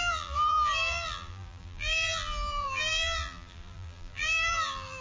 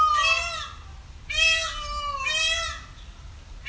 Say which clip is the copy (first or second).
first